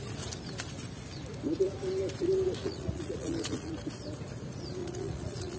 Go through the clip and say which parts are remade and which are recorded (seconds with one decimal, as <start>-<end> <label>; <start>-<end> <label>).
0.0-2.6 recorded; 2.6-3.7 remade; 3.7-4.8 recorded; 4.8-5.6 remade